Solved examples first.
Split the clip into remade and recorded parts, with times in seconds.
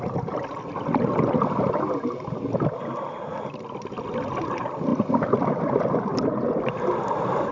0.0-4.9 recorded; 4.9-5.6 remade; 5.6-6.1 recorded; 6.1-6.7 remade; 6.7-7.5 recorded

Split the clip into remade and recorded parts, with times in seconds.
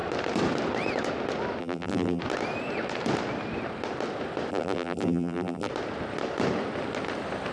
0.0-1.6 recorded; 1.6-2.2 remade; 2.2-4.5 recorded; 4.5-5.7 remade; 5.7-7.5 recorded